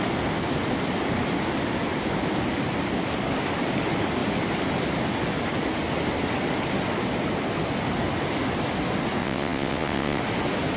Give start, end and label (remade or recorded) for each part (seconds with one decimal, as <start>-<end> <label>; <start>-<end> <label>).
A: 0.0-9.2 recorded; 9.2-10.2 remade; 10.2-10.8 recorded